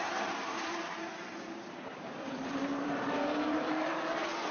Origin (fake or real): fake